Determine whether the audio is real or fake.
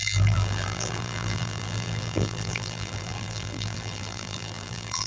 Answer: fake